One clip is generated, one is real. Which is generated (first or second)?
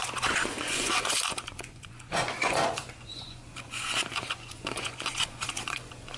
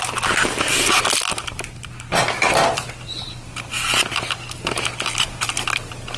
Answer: first